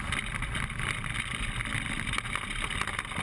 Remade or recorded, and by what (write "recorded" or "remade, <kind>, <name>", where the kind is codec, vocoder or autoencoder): remade, vocoder, BigVGAN v2